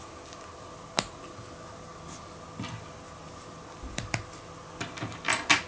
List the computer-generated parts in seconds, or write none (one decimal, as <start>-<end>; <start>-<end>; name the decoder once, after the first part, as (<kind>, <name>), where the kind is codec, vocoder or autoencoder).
none